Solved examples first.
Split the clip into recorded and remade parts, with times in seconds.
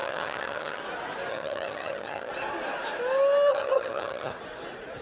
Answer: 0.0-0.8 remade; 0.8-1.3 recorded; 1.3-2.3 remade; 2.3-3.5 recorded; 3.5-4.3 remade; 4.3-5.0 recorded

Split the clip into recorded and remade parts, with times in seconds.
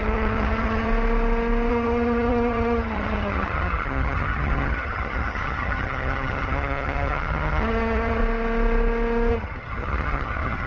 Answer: 0.0-0.9 remade; 0.9-1.7 recorded; 1.7-8.2 remade; 8.2-9.3 recorded; 9.3-10.7 remade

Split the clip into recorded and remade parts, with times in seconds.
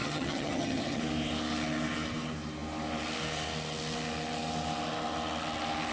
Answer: 0.0-1.0 remade; 1.0-5.9 recorded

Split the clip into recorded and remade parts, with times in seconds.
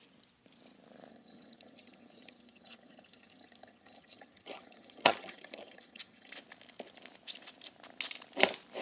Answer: 0.0-1.1 recorded; 1.1-6.3 remade; 6.3-8.8 recorded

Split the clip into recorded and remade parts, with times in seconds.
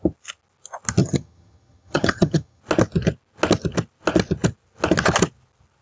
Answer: 0.0-1.0 recorded; 1.0-2.6 remade; 2.6-5.8 recorded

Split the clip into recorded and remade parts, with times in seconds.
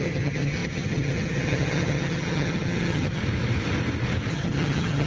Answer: 0.0-3.2 remade; 3.2-4.3 recorded; 4.3-5.1 remade